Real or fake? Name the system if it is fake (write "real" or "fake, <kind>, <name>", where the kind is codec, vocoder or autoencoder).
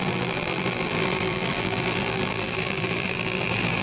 fake, vocoder, BigVGAN v2